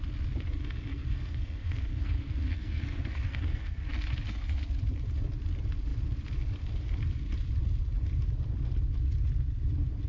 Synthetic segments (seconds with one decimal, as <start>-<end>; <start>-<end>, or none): 0.9-3.8